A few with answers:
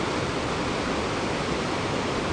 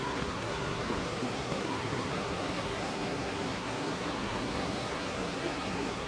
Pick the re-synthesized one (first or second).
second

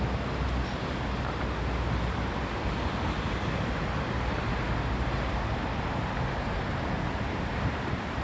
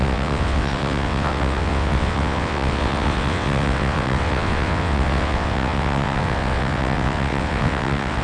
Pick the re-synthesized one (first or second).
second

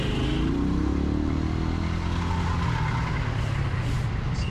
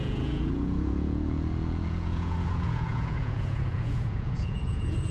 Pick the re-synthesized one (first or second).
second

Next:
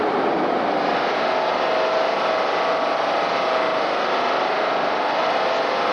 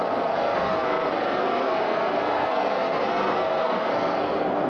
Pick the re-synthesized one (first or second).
second